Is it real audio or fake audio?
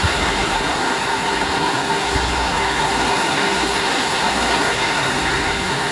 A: fake